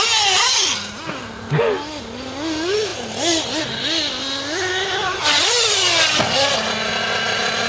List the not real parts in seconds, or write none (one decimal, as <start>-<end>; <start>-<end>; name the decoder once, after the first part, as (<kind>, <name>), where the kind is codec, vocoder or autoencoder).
none